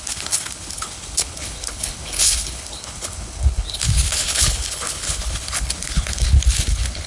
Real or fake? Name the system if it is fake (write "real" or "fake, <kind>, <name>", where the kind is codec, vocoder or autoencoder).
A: fake, codec, HILCodec